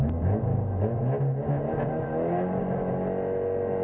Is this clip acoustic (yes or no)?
yes